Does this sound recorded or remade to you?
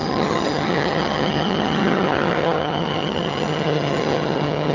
remade